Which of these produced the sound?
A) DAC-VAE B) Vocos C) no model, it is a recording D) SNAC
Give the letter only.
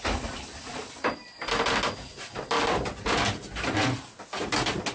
C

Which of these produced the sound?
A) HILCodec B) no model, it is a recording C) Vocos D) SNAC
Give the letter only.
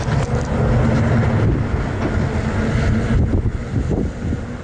B